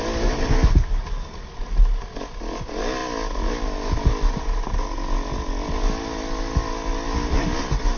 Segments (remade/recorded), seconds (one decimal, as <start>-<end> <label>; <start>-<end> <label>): 0.0-8.0 recorded